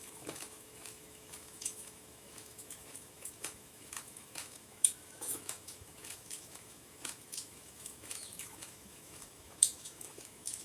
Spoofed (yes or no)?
yes